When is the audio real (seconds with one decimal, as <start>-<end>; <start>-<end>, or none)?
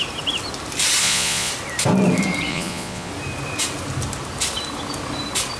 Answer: 0.0-1.0; 1.5-2.5; 3.1-5.6